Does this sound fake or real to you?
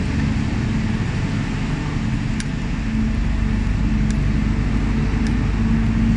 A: real